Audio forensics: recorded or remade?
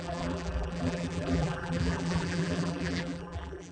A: remade